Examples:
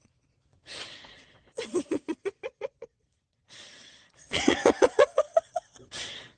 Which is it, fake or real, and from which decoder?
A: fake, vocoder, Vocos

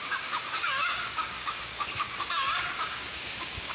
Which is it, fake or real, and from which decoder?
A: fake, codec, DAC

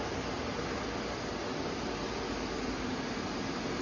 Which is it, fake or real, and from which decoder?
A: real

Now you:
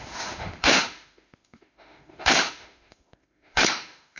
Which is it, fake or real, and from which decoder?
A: fake, autoencoder, DAC-VAE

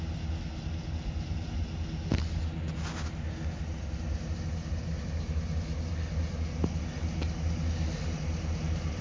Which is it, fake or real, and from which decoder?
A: real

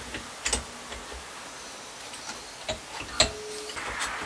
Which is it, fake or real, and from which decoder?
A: real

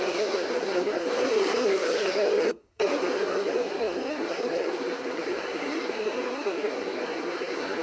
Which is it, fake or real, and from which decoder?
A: fake, codec, SNAC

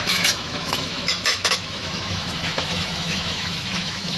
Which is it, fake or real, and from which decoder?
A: fake, autoencoder, DAC-VAE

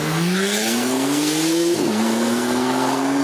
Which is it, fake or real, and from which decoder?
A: fake, codec, SNAC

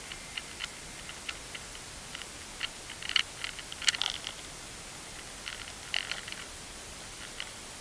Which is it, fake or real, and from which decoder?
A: real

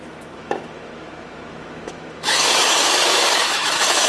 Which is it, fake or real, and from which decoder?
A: fake, autoencoder, DAC-VAE